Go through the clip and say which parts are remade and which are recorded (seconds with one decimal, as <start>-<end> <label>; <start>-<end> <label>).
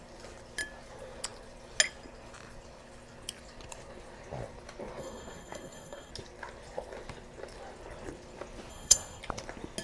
0.0-5.0 recorded; 5.0-6.1 remade; 6.1-8.7 recorded; 8.7-9.2 remade; 9.2-9.8 recorded